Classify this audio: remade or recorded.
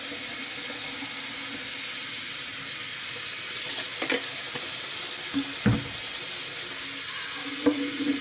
recorded